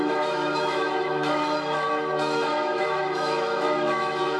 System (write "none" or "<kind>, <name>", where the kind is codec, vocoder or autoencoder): autoencoder, DAC-VAE